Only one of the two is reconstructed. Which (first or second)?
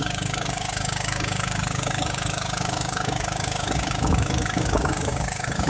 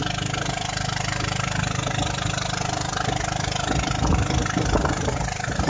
first